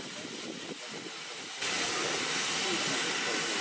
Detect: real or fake real